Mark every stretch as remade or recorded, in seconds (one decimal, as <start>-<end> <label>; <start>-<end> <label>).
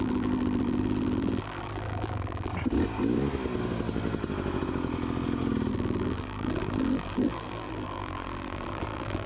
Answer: 0.0-2.5 remade; 2.5-5.7 recorded; 5.7-9.3 remade